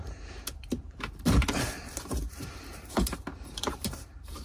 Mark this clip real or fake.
fake